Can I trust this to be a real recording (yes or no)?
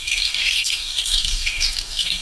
no